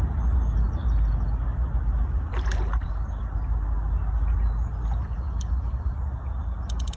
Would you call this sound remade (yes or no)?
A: no